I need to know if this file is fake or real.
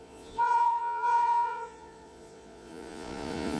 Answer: fake